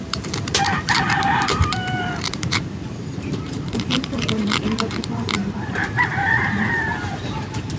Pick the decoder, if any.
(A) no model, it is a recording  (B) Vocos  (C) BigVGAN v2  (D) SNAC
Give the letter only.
C